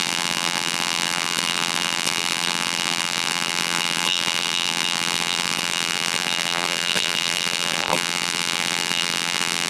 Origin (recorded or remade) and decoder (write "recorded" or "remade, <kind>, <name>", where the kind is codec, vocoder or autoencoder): remade, vocoder, BigVGAN v2